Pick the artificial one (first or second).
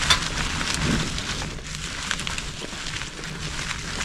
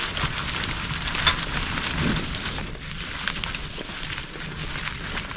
second